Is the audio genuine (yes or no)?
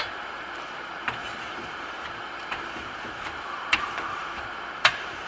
no